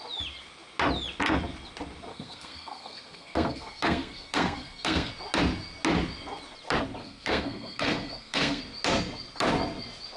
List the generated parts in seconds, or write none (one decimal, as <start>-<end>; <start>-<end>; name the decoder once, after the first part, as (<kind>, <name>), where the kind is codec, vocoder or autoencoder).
2.1-5.1 (codec, SNAC); 7.0-8.6